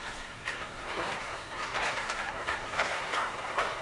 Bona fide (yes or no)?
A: no